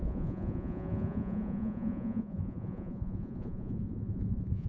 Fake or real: fake